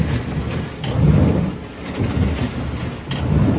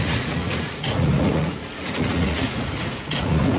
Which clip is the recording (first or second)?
first